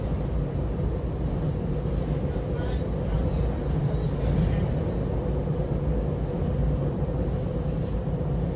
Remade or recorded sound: recorded